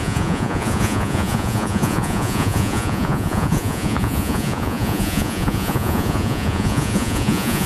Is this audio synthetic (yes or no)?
yes